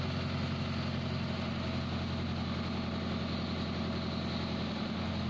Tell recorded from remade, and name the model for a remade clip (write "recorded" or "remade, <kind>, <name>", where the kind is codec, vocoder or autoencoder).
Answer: recorded